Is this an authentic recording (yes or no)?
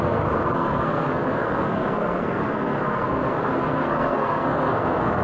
no